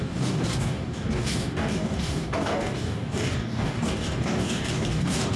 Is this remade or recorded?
remade